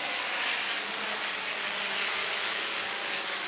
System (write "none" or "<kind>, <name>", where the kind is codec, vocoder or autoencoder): codec, DAC